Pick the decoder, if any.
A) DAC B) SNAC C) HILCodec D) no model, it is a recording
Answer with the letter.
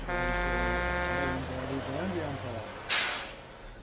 D